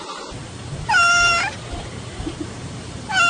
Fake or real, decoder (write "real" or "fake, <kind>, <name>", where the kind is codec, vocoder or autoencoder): fake, vocoder, BigVGAN v2